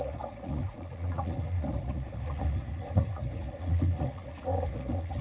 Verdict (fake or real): fake